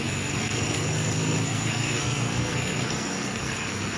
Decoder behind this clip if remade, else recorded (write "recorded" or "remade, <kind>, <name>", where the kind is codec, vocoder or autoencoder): remade, codec, SNAC